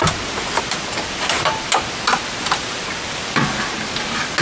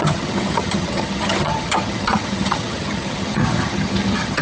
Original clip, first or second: first